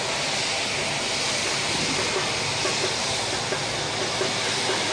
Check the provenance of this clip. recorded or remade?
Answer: recorded